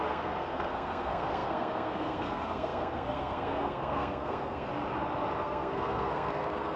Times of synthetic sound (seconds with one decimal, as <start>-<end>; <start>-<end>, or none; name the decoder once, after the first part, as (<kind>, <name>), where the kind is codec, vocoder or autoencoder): 0.0-4.7 (codec, SNAC); 5.4-6.8